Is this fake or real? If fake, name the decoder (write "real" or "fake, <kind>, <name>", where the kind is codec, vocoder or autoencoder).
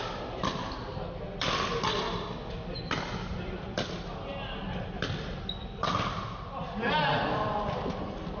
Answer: real